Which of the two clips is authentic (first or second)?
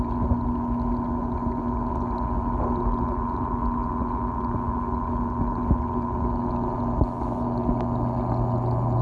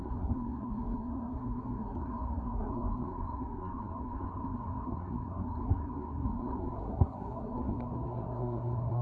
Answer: first